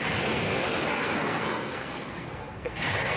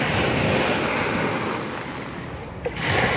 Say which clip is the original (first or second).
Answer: second